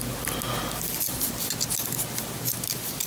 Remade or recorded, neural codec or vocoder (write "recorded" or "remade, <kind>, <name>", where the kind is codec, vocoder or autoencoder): recorded